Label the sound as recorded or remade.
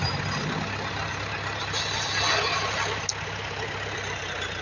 recorded